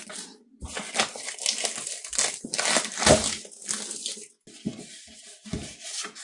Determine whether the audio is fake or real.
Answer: real